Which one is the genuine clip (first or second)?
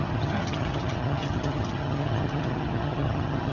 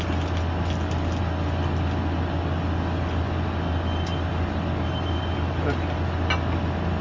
second